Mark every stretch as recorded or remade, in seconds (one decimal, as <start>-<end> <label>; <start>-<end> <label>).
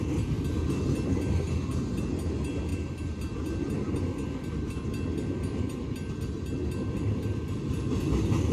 0.0-8.5 recorded